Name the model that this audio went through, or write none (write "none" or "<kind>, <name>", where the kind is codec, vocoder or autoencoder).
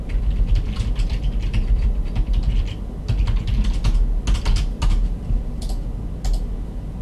none